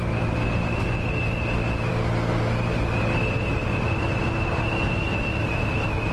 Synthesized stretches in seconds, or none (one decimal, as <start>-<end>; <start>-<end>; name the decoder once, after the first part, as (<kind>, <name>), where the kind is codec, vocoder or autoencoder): 3.6-4.1 (vocoder, BigVGAN v2)